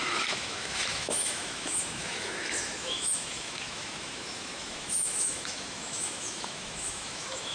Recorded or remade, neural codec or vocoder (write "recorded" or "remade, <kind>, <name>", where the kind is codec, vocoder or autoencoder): remade, autoencoder, DAC-VAE